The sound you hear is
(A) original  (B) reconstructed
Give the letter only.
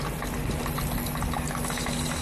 A